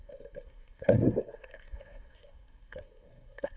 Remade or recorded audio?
remade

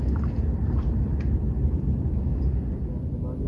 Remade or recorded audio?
recorded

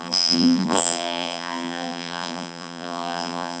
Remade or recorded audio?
remade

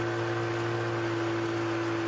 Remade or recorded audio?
recorded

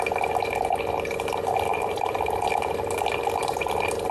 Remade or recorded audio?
recorded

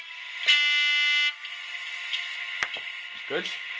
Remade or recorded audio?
recorded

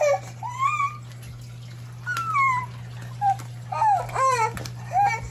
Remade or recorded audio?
recorded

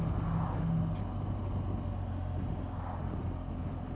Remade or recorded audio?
recorded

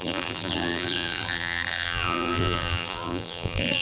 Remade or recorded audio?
remade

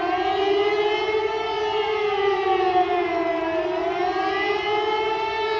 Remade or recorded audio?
recorded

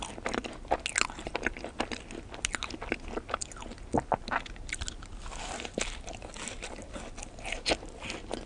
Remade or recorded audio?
recorded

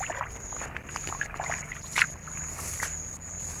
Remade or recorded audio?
recorded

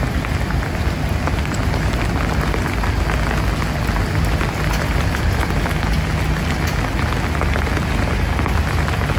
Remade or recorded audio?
recorded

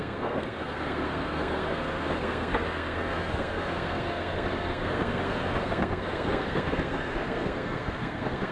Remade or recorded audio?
remade